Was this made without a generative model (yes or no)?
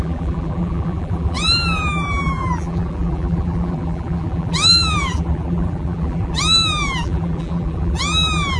no